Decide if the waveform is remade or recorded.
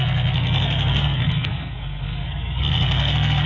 remade